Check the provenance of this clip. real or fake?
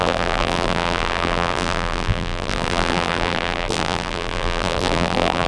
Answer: fake